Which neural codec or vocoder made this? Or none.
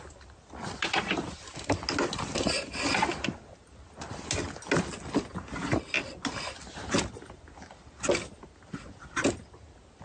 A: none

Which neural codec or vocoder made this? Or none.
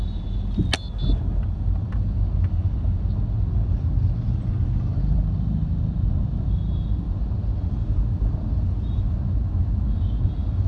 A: none